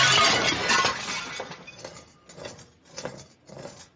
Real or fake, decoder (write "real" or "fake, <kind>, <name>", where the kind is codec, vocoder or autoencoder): real